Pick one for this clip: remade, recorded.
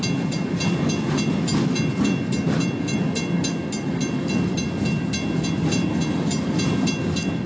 recorded